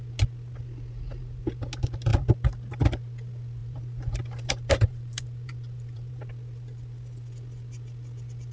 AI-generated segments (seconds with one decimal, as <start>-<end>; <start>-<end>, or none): 3.6-6.3